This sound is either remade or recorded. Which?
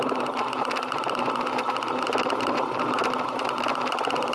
remade